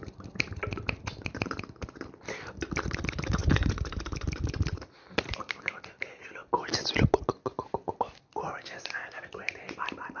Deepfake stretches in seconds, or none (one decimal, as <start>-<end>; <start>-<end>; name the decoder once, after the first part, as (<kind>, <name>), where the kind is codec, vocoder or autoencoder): 0.0-6.4 (vocoder, BigVGAN v2); 8.1-10.2